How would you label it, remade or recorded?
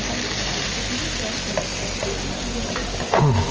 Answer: recorded